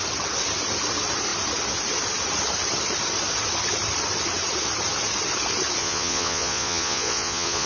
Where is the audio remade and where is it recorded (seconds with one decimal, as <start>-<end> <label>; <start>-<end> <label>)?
0.0-5.8 recorded; 5.8-7.7 remade